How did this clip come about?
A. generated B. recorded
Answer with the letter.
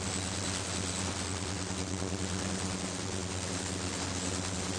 B